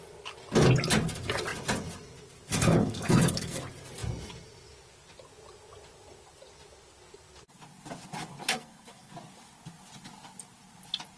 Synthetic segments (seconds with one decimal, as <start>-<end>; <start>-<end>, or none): 2.5-3.6; 8.5-9.1